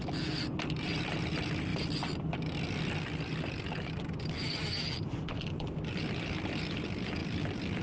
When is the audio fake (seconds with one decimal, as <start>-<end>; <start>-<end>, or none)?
none